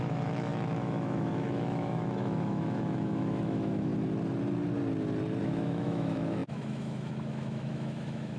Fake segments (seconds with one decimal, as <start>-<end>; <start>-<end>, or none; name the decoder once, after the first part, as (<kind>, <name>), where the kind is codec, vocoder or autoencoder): 0.0-3.9 (autoencoder, DAC-VAE); 5.4-8.4